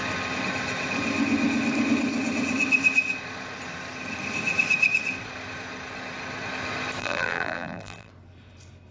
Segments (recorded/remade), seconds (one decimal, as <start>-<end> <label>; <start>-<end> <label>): 0.0-7.0 recorded; 7.0-8.1 remade; 8.1-8.9 recorded